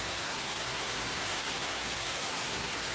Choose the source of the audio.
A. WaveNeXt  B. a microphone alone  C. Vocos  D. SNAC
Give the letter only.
D